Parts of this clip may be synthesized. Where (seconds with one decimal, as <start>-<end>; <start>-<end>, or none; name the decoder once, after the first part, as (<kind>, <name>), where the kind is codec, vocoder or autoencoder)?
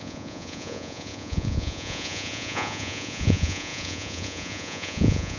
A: 0.0-5.4 (vocoder, Vocos)